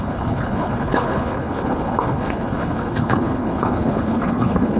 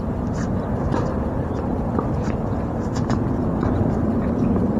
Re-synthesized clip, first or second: first